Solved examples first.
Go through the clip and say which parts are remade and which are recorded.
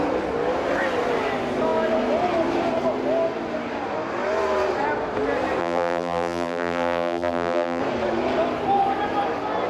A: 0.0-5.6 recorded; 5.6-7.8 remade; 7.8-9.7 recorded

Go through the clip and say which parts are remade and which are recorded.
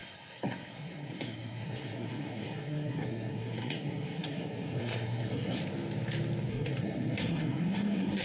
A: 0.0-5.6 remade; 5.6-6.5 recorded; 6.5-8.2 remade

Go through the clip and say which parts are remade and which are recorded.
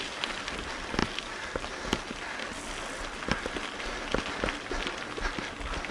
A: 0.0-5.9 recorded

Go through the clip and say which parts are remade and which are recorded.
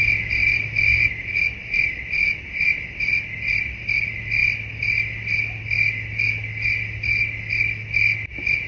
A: 0.0-8.7 recorded